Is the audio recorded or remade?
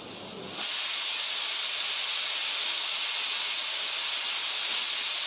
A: recorded